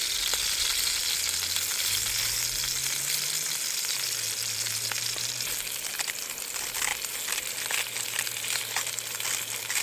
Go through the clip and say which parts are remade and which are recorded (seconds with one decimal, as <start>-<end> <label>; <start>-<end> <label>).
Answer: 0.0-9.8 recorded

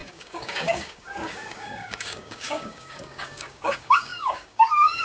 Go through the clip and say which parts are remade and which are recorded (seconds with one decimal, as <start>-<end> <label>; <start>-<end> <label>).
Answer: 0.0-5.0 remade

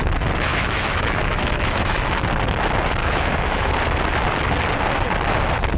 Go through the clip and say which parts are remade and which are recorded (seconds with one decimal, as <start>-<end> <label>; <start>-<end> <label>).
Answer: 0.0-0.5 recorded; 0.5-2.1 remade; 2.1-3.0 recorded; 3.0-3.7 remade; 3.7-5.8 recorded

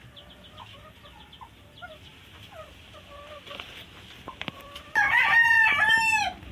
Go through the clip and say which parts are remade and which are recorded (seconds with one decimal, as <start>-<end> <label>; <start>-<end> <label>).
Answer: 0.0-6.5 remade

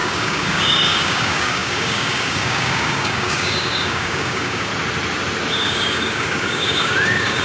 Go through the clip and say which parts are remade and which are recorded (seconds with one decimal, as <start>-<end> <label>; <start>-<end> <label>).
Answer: 0.0-4.7 remade; 4.7-5.5 recorded; 5.5-7.4 remade